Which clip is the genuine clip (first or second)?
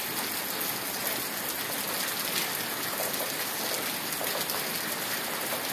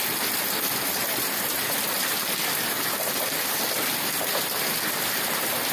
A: first